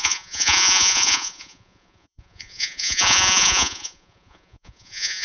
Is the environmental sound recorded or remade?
remade